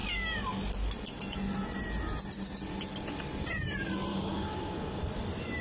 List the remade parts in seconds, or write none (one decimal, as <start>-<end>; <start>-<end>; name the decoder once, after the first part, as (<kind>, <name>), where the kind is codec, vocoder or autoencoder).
4.1-5.0 (codec, DAC)